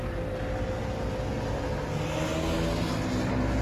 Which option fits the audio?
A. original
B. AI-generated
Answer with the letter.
A